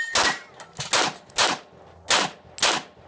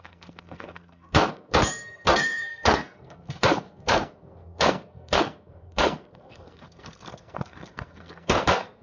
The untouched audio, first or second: first